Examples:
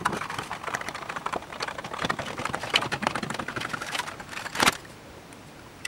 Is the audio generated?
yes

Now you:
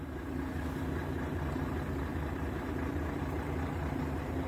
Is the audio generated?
yes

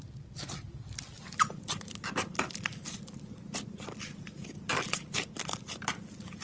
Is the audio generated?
no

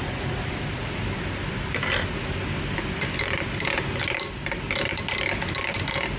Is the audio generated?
no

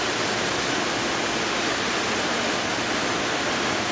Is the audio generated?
no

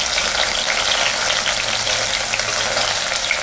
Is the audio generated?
no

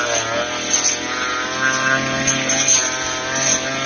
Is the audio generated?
no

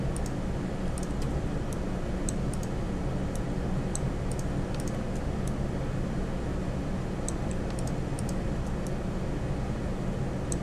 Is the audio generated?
no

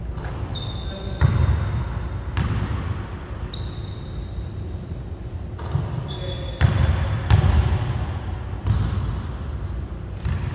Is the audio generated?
no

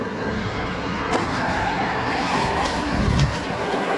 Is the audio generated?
yes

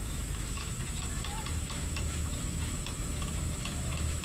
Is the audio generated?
yes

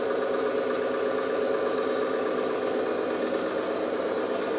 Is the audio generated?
no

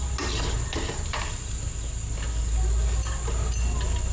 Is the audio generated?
no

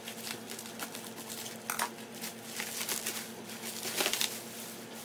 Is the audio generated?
no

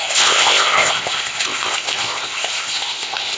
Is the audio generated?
yes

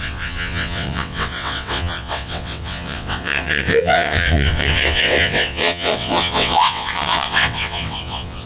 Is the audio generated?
yes